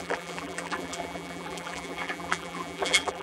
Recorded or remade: remade